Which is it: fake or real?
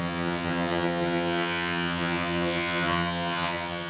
fake